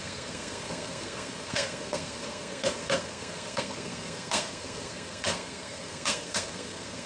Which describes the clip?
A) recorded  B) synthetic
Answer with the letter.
B